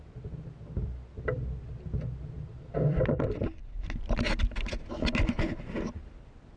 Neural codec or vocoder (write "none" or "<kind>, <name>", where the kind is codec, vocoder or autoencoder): none